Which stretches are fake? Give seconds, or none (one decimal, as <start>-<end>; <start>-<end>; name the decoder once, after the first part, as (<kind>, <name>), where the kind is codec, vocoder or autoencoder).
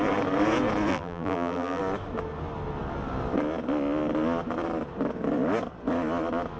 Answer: 0.9-1.8 (vocoder, BigVGAN v2)